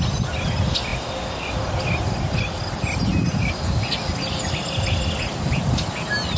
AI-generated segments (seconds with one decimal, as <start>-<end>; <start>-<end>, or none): 3.1-3.9